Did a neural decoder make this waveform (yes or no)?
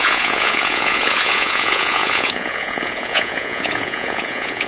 yes